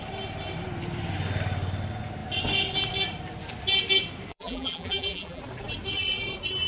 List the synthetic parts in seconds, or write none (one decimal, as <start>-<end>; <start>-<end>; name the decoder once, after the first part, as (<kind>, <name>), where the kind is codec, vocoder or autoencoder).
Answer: 4.3-5.4 (vocoder, BigVGAN v2)